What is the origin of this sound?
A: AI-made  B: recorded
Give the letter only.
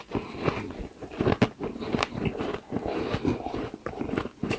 B